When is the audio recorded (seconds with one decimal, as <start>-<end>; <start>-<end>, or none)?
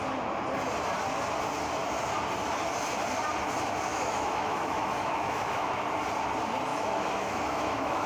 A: 0.0-3.9; 5.8-6.7